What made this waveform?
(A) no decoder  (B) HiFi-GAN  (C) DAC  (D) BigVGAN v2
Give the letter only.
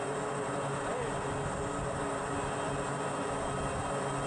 A